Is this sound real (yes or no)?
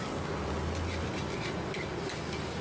yes